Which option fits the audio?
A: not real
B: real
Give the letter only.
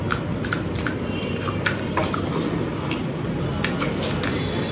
B